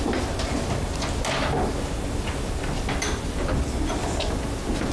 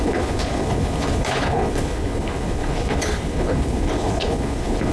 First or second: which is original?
first